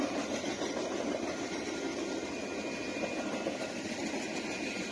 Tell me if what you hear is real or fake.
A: real